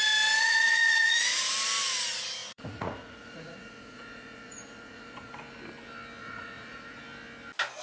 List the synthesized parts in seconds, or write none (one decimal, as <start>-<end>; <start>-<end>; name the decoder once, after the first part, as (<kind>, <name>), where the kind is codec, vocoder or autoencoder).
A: 0.4-1.5 (vocoder, Vocos); 2.4-5.3; 6.2-7.0